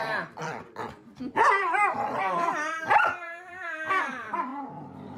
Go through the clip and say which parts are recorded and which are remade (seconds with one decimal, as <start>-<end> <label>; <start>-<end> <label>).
0.0-4.5 remade; 4.5-5.2 recorded